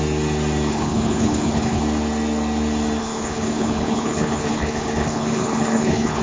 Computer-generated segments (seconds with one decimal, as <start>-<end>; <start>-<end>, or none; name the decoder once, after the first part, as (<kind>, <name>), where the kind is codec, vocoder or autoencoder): 0.7-1.8 (codec, HILCodec); 3.0-6.2